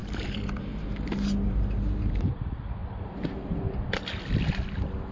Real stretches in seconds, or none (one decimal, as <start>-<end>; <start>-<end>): 0.0-5.1